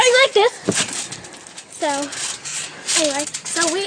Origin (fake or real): real